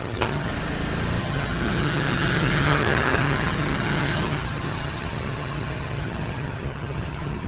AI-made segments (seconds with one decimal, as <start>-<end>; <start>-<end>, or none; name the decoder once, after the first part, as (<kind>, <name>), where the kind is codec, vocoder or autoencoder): 0.0-0.5 (vocoder, HiFi-GAN); 1.2-7.5